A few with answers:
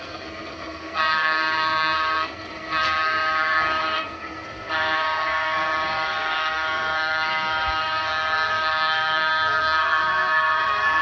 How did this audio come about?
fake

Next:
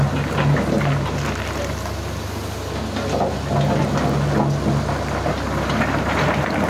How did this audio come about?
real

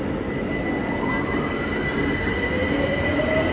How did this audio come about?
real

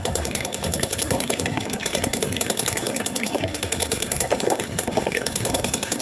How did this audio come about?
fake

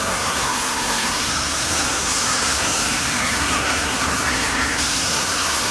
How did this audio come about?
fake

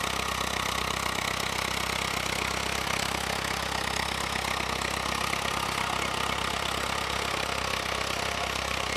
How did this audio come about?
real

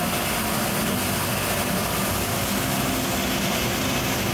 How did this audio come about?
real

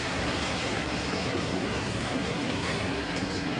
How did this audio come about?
fake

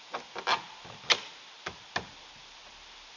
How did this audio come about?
real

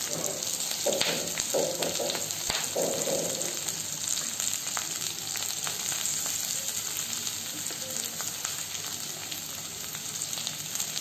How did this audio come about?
real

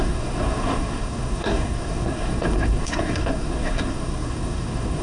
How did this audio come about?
fake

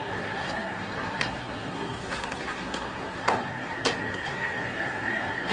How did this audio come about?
fake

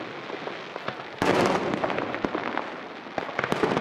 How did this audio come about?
real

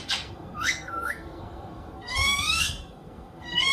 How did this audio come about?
fake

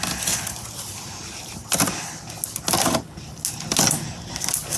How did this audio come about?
real